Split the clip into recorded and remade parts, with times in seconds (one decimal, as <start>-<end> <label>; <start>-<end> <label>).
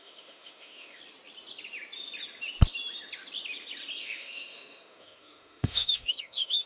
0.0-1.0 remade; 1.0-4.0 recorded; 4.0-6.7 remade